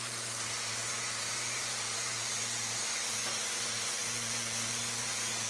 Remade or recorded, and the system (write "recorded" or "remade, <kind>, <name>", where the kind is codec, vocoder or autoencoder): remade, vocoder, Vocos